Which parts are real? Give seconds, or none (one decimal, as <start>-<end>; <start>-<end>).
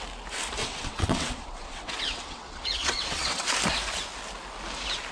0.0-0.6; 3.5-5.1